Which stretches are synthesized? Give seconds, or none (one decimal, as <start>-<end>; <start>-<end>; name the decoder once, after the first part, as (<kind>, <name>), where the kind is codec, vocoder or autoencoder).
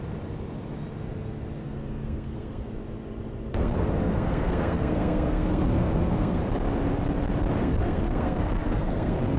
1.6-2.7 (codec, SNAC); 3.5-6.4; 7.6-9.4